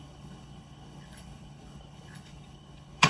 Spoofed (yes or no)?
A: yes